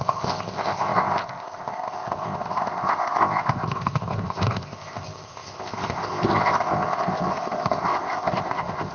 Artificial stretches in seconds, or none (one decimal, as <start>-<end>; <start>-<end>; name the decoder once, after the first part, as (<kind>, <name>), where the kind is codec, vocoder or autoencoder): 0.0-8.9 (codec, ZipCodec)